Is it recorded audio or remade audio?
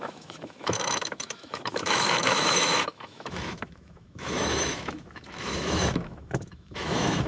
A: remade